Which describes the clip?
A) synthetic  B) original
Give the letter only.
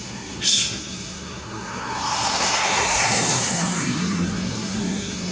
A